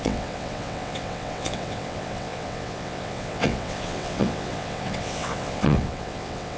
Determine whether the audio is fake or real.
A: fake